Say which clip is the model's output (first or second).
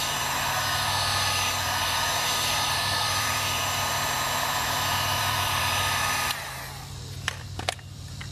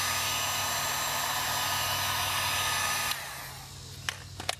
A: first